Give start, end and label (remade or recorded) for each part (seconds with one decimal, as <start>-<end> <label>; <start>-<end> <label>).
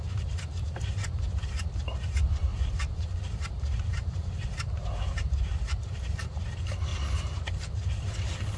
0.0-6.9 remade; 6.9-8.6 recorded